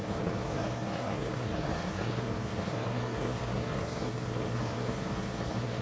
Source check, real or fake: fake